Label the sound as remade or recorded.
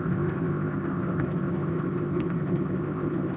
remade